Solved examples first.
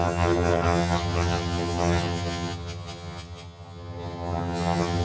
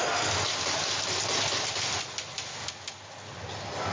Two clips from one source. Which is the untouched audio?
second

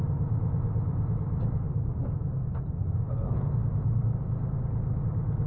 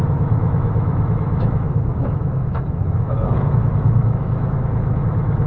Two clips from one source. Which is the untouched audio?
first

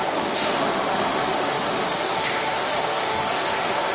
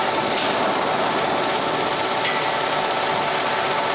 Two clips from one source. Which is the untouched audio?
second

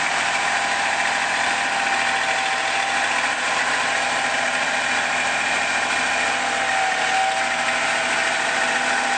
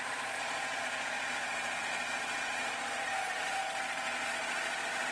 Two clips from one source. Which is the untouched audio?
first